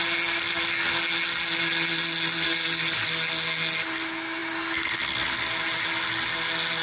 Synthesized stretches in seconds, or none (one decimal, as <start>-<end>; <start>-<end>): none